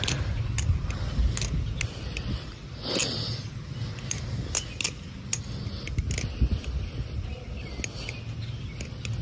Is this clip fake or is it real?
real